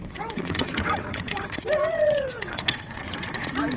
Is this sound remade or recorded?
remade